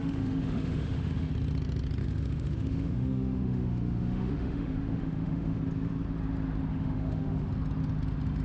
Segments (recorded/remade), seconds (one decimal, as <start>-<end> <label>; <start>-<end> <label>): 0.0-1.3 remade; 1.3-2.0 recorded; 2.0-5.6 remade; 5.6-6.7 recorded; 6.7-7.5 remade; 7.5-8.4 recorded